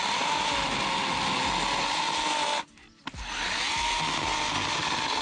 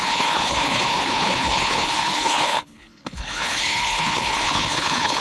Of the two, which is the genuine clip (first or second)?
first